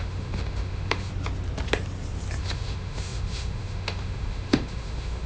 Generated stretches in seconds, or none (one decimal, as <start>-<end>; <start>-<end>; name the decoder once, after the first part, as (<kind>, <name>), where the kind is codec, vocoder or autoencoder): 0.0-1.1 (autoencoder, DAC-VAE); 2.4-5.3